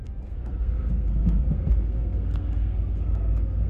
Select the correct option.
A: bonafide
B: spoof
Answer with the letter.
B